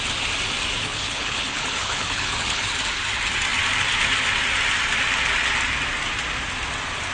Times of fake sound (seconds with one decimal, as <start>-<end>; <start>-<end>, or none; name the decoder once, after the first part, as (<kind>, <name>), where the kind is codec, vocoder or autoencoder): 0.8-2.7 (codec, HILCodec)